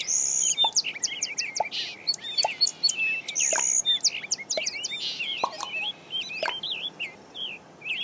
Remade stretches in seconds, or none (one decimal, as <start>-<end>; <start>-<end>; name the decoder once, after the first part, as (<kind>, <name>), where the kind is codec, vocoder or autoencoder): 0.0-2.7 (vocoder, BigVGAN v2); 5.2-8.0